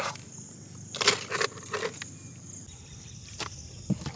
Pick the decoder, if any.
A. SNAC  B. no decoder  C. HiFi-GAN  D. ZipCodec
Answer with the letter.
B